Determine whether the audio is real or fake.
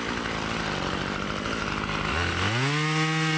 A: real